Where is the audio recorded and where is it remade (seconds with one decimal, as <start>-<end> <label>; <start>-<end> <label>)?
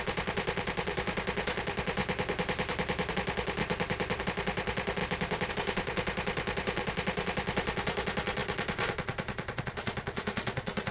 0.0-2.0 remade; 2.0-3.1 recorded; 3.1-3.6 remade; 3.6-4.2 recorded; 4.2-5.0 remade; 5.0-5.5 recorded; 5.5-10.9 remade